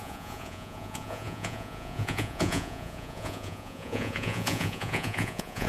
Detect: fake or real fake